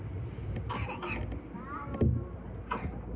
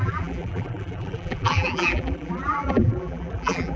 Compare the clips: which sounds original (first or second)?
first